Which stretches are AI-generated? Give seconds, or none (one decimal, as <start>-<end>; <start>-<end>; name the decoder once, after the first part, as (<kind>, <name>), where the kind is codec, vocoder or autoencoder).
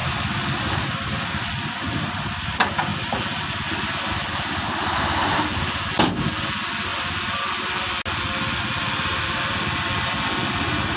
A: 0.0-1.9 (vocoder, BigVGAN v2)